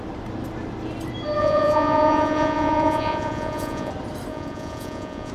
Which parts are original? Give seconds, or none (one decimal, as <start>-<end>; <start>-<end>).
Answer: 0.0-1.4; 3.9-4.3